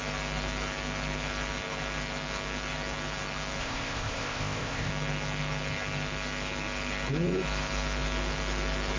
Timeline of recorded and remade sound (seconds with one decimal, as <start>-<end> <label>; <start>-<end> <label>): 0.0-3.6 recorded; 3.6-4.9 remade; 4.9-9.0 recorded